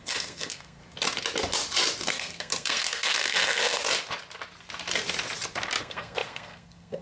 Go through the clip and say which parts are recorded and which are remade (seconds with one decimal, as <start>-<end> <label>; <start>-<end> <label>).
0.0-0.8 remade; 0.8-2.1 recorded; 2.1-3.8 remade; 3.8-5.8 recorded; 5.8-7.0 remade